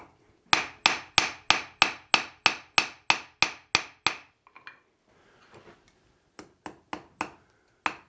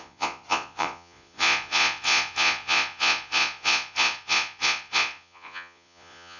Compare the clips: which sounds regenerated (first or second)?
second